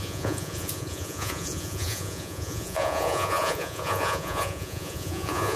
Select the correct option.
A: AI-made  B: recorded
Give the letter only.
A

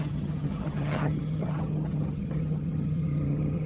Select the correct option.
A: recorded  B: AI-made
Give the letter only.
B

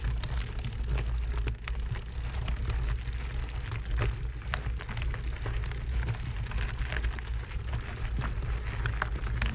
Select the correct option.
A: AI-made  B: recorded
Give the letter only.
B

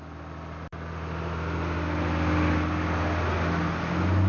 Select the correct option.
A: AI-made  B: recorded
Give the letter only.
B